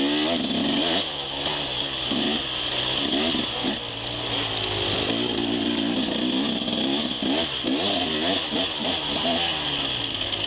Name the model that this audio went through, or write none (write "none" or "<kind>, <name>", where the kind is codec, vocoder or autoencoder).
none